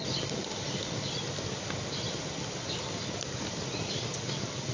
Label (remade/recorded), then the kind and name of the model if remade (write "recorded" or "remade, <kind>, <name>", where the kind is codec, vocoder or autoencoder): recorded